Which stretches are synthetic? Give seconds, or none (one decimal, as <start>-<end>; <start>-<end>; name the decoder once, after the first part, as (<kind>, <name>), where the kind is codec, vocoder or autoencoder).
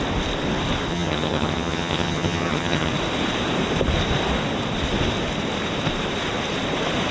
0.9-2.9 (vocoder, HiFi-GAN)